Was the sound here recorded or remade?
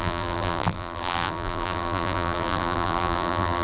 remade